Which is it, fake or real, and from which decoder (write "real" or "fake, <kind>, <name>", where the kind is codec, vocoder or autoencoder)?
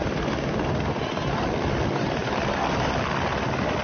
real